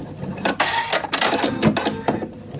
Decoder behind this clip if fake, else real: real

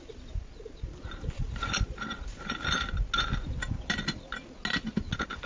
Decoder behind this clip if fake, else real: real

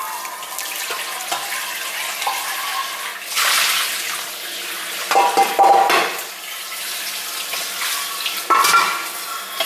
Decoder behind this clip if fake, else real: real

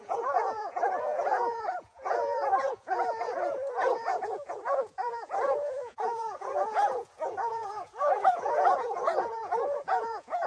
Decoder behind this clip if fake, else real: fake, vocoder, Vocos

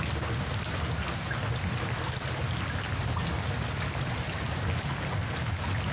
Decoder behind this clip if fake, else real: real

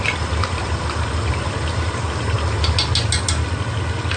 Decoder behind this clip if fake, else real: real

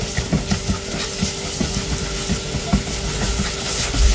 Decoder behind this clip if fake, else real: real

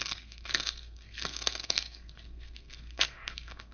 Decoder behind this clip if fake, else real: fake, codec, SNAC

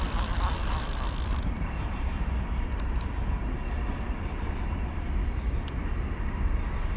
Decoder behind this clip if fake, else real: real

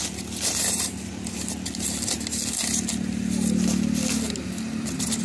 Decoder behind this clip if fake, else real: real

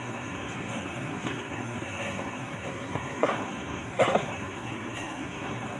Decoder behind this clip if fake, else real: fake, codec, SNAC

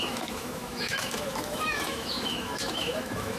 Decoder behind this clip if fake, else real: fake, autoencoder, DAC-VAE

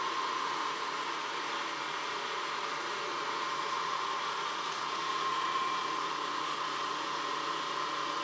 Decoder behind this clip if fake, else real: fake, vocoder, Vocos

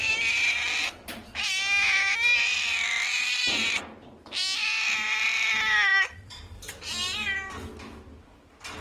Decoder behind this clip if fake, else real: real